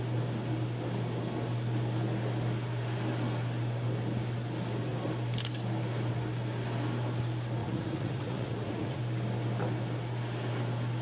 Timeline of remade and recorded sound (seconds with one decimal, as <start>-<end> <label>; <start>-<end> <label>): 0.0-7.6 recorded; 7.6-9.0 remade; 9.0-11.0 recorded